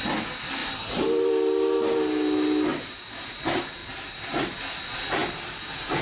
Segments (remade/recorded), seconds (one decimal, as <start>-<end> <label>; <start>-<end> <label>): 0.0-0.6 recorded; 0.6-1.3 remade; 1.3-2.7 recorded; 2.7-3.3 remade; 3.3-3.8 recorded; 3.8-4.6 remade; 4.6-5.2 recorded; 5.2-6.0 remade